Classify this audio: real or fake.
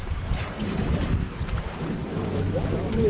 fake